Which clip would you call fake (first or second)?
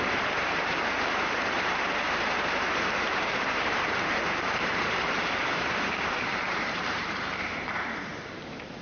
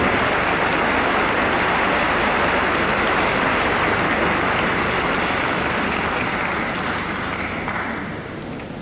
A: first